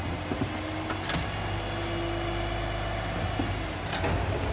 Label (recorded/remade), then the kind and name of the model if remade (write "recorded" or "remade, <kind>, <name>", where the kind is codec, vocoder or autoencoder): recorded